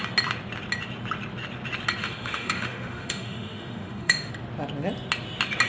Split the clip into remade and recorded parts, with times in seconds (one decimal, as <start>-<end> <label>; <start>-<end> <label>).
0.0-2.0 recorded; 2.0-4.3 remade; 4.3-5.7 recorded

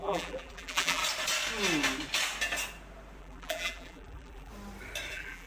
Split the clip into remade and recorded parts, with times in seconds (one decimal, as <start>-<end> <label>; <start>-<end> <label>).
0.0-1.0 remade; 1.0-3.2 recorded; 3.2-4.5 remade; 4.5-5.1 recorded; 5.1-5.5 remade

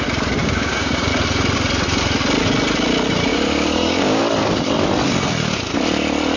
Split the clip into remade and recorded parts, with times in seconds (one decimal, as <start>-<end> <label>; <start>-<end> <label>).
0.0-0.4 recorded; 0.4-1.1 remade; 1.1-3.3 recorded; 3.3-4.2 remade; 4.2-6.4 recorded

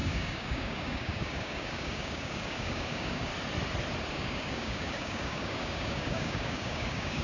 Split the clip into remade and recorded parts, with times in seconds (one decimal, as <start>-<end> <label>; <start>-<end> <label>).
0.0-3.3 remade; 3.3-4.1 recorded; 4.1-7.2 remade

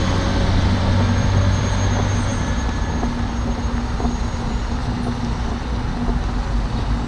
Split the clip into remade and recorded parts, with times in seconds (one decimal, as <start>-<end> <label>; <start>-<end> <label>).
0.0-7.1 recorded

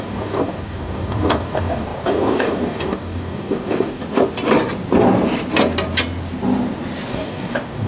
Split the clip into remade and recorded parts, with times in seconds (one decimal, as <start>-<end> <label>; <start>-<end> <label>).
0.0-4.0 remade; 4.0-7.1 recorded; 7.1-7.9 remade

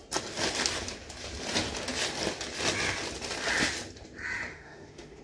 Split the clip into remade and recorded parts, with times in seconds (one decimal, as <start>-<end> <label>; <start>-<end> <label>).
0.0-4.5 recorded; 4.5-5.2 remade

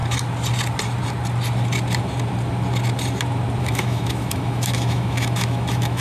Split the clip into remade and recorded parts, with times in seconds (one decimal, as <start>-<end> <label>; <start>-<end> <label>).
0.0-3.6 recorded; 3.6-6.0 remade